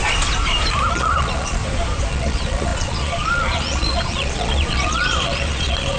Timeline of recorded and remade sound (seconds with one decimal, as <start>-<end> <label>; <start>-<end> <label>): 0.0-0.9 recorded; 0.9-1.6 remade; 1.6-2.1 recorded; 2.1-6.0 remade